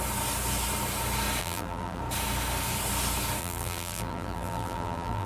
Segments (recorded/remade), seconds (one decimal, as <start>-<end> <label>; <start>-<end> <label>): 0.0-1.4 recorded; 1.4-2.0 remade; 2.0-3.4 recorded; 3.4-5.3 remade